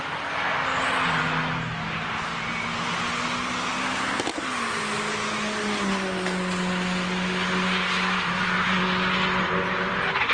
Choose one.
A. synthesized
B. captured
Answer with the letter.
B